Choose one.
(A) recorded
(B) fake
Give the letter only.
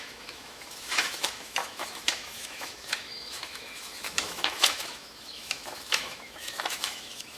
B